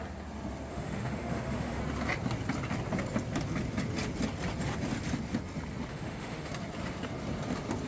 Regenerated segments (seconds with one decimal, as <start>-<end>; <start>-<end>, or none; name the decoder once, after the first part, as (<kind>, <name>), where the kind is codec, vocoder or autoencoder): 0.7-1.8 (autoencoder, DAC-VAE); 5.9-6.5